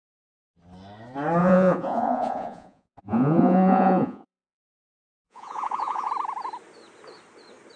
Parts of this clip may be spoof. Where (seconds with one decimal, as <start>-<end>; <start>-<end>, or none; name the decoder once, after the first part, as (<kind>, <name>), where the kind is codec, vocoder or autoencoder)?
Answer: 1.4-6.1 (vocoder, Vocos)